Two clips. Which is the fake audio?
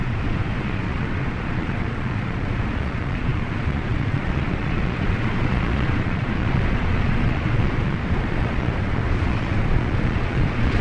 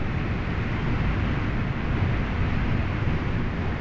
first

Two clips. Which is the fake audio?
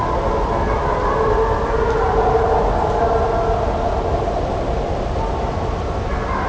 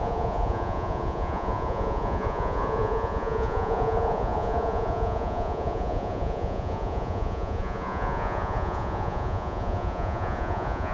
second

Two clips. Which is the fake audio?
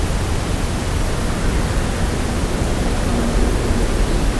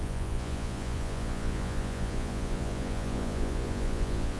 second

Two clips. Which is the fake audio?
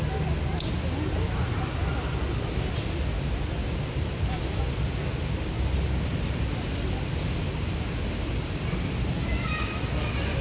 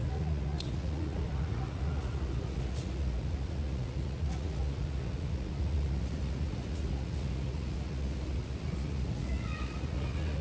second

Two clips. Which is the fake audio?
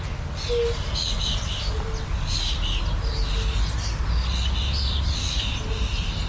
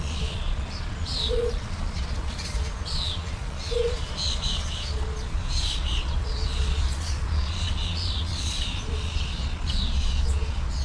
second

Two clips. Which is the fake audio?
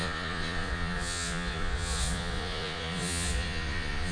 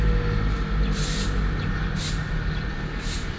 first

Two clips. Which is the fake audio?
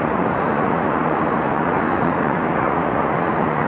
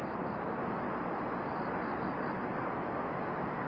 first